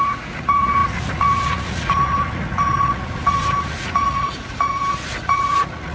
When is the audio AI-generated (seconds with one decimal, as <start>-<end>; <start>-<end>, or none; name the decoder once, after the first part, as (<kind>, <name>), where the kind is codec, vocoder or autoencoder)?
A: 0.0-5.9 (vocoder, Vocos)